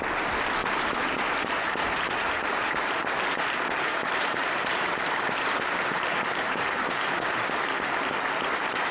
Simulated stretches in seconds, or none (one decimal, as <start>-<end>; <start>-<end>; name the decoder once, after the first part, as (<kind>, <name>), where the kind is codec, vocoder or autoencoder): 0.6-2.9 (vocoder, BigVGAN v2); 3.9-7.4